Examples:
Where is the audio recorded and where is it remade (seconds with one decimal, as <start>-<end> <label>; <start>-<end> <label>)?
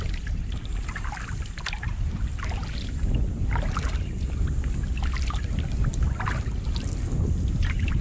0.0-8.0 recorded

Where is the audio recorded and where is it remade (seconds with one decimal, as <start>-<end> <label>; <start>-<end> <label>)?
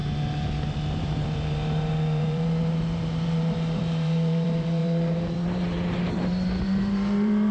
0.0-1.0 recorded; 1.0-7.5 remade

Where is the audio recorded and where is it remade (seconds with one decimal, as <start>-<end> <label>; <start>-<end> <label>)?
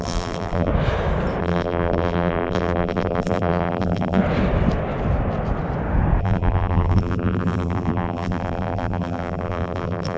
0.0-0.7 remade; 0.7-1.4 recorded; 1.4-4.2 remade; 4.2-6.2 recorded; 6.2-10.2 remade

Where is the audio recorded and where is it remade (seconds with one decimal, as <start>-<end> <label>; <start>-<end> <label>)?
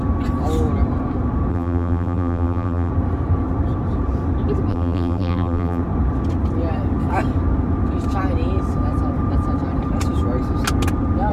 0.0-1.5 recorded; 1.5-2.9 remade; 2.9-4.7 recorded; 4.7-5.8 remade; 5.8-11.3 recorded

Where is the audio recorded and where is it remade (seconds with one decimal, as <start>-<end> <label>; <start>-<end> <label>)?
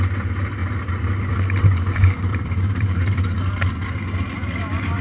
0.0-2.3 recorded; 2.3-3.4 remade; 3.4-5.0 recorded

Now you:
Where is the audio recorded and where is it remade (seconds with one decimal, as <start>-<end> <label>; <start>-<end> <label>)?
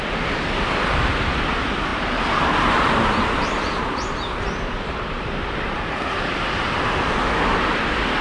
0.0-1.9 recorded; 1.9-6.8 remade; 6.8-8.2 recorded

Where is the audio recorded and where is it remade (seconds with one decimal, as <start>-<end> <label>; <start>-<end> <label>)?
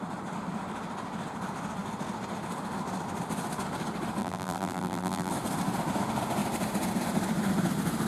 0.0-4.2 recorded; 4.2-5.3 remade; 5.3-8.1 recorded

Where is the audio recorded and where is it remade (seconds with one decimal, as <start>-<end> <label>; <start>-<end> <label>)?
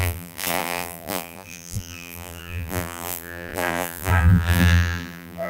0.0-5.5 remade